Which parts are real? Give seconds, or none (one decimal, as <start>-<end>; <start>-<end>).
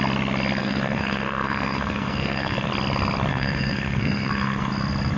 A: 0.0-0.6; 2.7-3.3; 4.7-5.2